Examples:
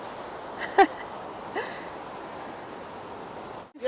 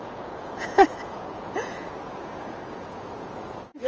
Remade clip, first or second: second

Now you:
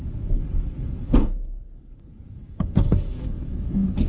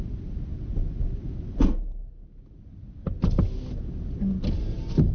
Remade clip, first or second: first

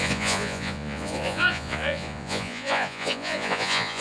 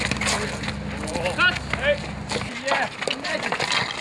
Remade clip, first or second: first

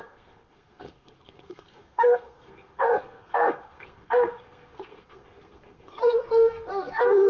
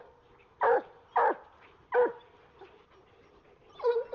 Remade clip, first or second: first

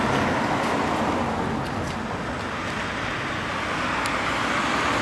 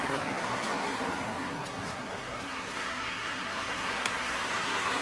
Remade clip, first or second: second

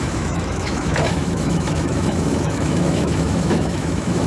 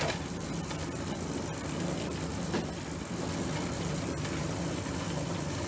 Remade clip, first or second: first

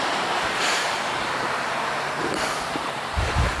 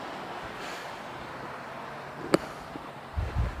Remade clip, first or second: first